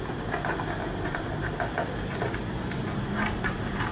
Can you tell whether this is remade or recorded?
recorded